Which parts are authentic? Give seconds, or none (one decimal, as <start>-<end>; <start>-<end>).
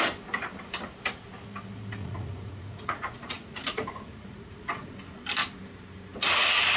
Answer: 0.0-2.0; 4.9-6.8